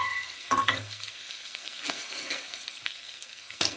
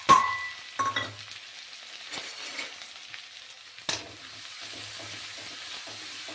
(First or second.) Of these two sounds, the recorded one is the second